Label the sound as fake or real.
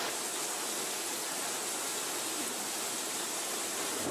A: real